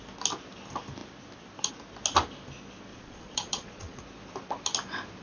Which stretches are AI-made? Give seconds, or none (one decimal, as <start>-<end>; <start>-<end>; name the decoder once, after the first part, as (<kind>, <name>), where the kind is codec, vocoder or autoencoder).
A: 2.9-4.0 (vocoder, Vocos)